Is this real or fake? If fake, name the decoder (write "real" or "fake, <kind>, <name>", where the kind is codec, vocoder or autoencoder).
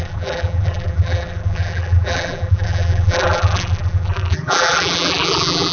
fake, vocoder, BigVGAN v2